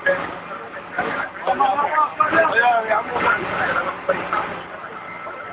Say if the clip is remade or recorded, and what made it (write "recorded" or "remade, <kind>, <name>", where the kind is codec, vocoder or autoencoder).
recorded